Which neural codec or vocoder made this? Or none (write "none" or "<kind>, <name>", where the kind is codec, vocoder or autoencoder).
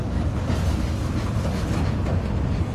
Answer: none